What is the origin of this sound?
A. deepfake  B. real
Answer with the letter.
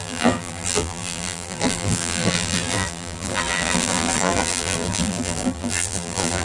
A